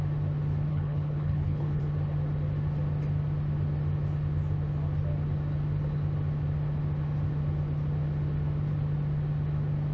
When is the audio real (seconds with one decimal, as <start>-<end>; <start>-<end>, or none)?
0.0-0.7; 1.8-9.9